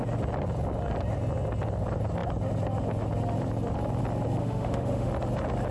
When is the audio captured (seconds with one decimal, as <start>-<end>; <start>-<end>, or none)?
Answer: 0.0-4.4; 5.1-5.7

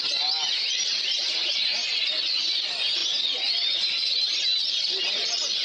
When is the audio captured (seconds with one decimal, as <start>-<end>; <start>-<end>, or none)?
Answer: 0.0-5.6

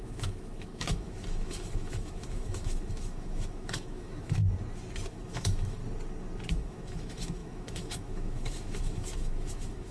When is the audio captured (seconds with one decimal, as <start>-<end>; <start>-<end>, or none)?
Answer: 4.4-5.1; 5.8-6.5

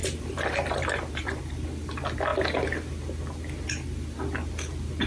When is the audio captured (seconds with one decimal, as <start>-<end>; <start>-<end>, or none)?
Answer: 1.4-5.1

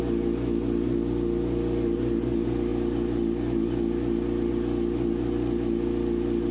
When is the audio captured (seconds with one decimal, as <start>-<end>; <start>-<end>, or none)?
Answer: 0.0-6.5

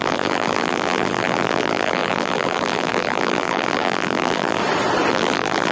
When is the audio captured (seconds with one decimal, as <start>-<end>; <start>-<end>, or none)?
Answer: 4.6-5.1

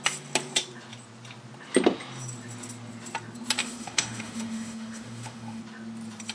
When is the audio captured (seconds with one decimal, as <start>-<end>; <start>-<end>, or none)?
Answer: 0.0-3.6; 5.6-6.3